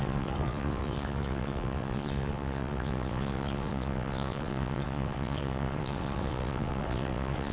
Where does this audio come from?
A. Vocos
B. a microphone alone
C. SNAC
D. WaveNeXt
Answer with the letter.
D